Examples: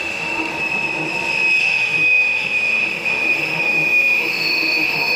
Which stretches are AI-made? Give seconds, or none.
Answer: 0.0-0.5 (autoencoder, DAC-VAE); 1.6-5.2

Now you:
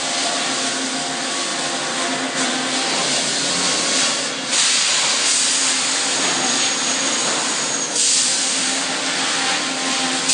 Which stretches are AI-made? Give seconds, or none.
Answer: 8.4-8.9 (autoencoder, DAC-VAE)

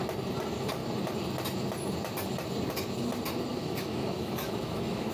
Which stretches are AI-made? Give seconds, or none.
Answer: 3.5-5.1 (autoencoder, DAC-VAE)

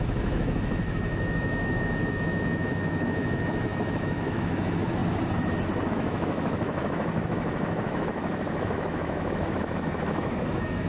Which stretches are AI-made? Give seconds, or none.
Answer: 0.0-5.0 (autoencoder, DAC-VAE); 5.9-10.9

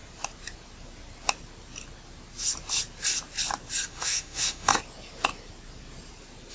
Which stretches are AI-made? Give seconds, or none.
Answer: 3.9-4.7 (autoencoder, DAC-VAE)